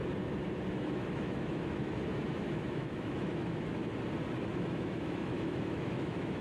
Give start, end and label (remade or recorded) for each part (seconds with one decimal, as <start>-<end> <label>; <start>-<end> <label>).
0.0-0.7 recorded; 0.7-3.7 remade; 3.7-4.5 recorded; 4.5-6.4 remade